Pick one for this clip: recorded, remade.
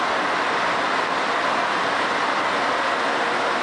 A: recorded